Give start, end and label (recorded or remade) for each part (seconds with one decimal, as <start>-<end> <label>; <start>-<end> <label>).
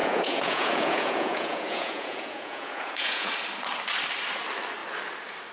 0.0-3.3 remade; 3.3-5.5 recorded